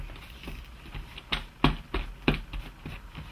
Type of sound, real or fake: real